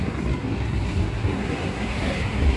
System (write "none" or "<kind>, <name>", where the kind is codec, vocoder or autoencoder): codec, SNAC